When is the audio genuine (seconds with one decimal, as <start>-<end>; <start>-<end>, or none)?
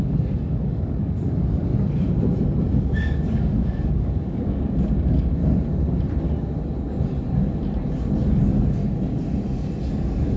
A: 1.7-2.8; 5.4-8.3; 8.8-9.8